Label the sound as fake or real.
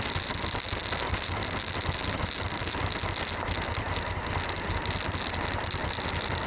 real